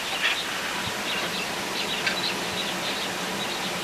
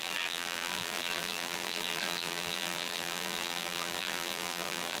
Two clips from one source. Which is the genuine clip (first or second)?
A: first